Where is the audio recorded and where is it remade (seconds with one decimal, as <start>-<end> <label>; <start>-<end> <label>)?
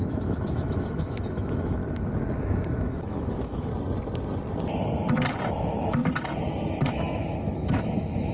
0.0-1.8 remade; 1.8-2.4 recorded; 2.4-3.7 remade; 3.7-5.5 recorded; 5.5-6.0 remade; 6.0-6.9 recorded; 6.9-8.3 remade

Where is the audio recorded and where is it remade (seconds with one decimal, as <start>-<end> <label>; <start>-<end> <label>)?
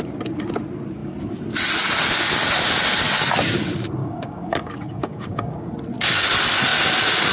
0.0-4.0 recorded; 4.0-5.7 remade; 5.7-7.3 recorded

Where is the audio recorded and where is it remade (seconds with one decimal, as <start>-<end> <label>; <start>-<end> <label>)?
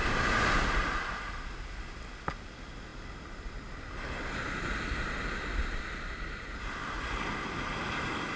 0.0-8.4 recorded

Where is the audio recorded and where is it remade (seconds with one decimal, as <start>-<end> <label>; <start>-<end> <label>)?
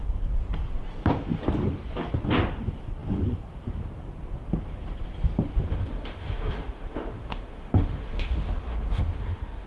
0.0-5.7 recorded; 5.7-9.7 remade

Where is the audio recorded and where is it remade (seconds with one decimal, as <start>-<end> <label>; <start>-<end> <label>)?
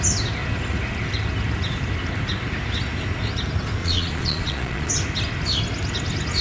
0.0-3.8 recorded; 3.8-4.9 remade; 4.9-6.4 recorded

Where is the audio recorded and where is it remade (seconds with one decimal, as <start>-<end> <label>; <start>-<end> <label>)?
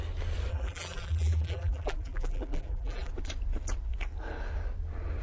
0.0-0.5 recorded; 0.5-3.1 remade; 3.1-5.2 recorded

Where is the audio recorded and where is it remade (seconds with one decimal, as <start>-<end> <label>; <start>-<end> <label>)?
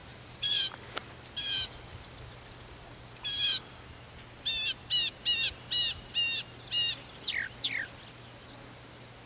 0.0-0.6 remade; 0.6-9.3 recorded